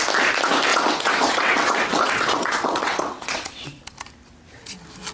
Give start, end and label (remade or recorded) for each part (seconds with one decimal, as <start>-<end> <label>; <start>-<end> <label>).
0.0-0.7 recorded; 0.7-3.8 remade; 3.8-5.1 recorded